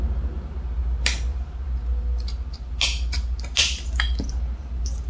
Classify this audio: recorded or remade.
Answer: recorded